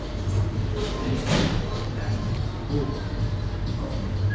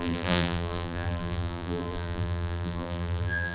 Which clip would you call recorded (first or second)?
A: first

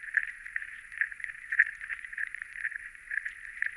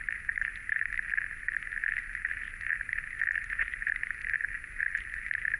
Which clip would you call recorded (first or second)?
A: second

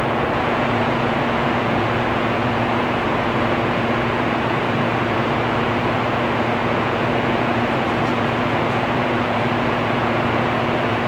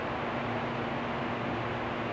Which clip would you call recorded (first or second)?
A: second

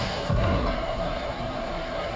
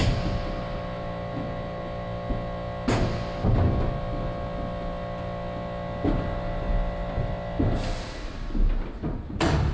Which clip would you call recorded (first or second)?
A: second